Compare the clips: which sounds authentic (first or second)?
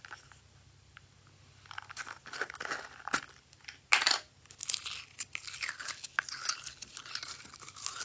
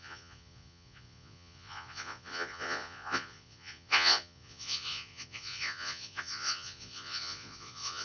first